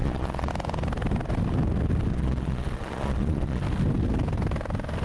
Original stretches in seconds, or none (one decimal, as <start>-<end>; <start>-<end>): 0.5-2.1; 3.6-5.0